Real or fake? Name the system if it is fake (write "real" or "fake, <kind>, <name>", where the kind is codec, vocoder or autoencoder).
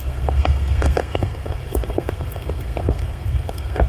fake, codec, SNAC